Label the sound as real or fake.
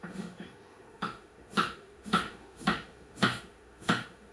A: fake